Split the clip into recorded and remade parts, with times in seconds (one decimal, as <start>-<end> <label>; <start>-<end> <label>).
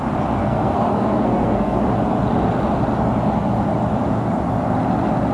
0.0-0.4 recorded; 0.4-1.8 remade; 1.8-5.3 recorded